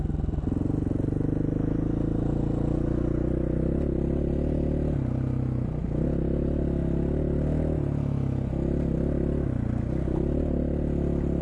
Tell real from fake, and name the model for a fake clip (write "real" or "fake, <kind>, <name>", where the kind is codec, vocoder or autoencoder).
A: real